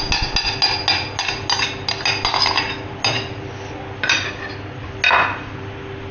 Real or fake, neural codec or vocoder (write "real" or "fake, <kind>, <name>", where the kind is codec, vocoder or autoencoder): real